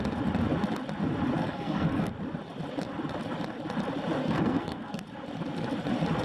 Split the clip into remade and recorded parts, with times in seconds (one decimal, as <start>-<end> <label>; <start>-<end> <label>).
0.0-1.4 recorded; 1.4-2.1 remade; 2.1-4.2 recorded; 4.2-5.0 remade; 5.0-6.2 recorded